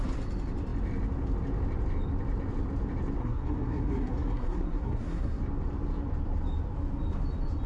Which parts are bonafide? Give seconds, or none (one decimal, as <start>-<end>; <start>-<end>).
0.0-3.2; 5.4-7.7